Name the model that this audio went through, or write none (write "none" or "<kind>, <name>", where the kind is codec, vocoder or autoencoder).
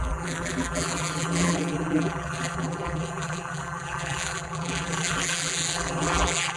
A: vocoder, BigVGAN v2